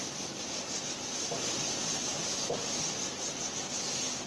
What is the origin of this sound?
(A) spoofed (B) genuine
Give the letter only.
B